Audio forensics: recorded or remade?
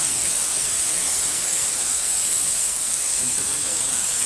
remade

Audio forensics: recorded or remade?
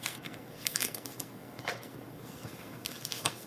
remade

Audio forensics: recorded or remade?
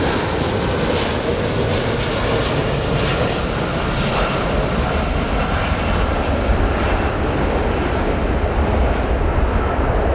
recorded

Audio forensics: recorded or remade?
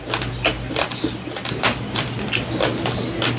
recorded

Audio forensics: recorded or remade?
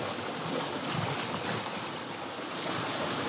recorded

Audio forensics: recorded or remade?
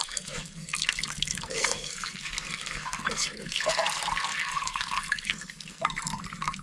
remade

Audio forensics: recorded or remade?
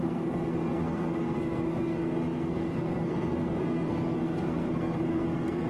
remade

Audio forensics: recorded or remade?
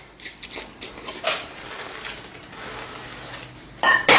recorded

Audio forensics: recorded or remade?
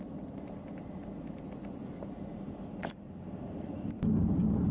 recorded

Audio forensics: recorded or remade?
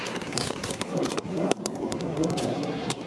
remade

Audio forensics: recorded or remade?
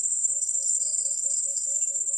remade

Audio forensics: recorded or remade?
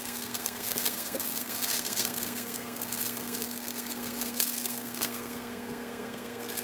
remade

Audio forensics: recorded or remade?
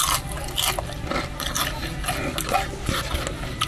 recorded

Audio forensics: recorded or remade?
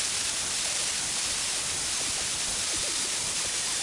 recorded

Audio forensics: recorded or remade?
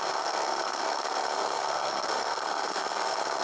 remade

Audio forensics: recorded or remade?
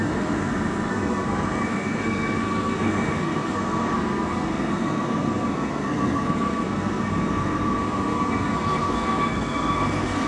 remade